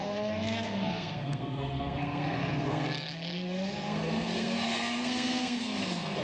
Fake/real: fake